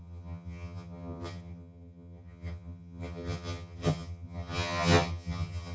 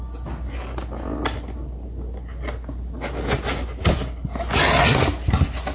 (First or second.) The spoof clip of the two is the first